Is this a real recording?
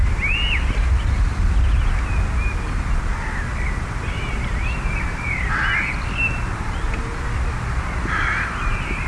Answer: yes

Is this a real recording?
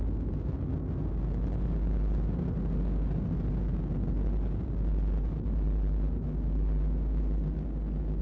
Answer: yes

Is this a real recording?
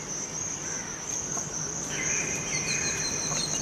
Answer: no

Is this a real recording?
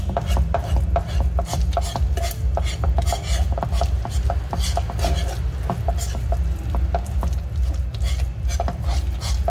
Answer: yes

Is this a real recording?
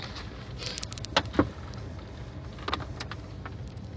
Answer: yes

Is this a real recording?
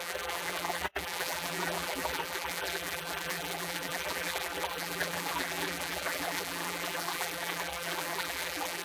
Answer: no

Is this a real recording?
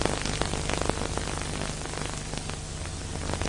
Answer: yes